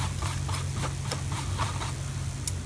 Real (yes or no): yes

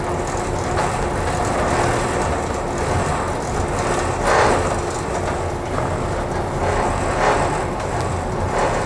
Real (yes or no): yes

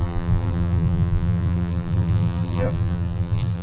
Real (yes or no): no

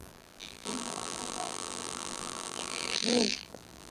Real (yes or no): no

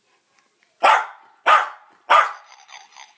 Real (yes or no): yes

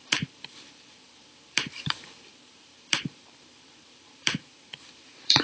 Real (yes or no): no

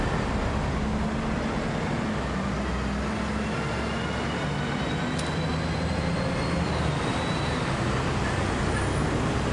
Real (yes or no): yes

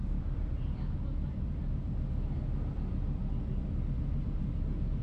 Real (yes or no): no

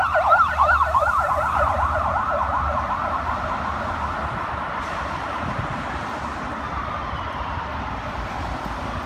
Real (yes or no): no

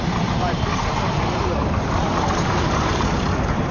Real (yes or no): no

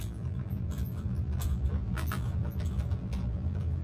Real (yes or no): no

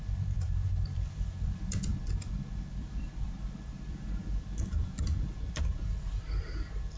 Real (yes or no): no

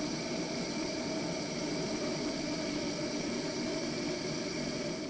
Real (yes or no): no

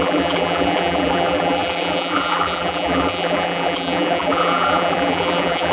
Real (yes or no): no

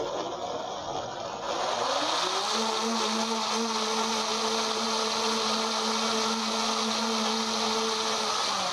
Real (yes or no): yes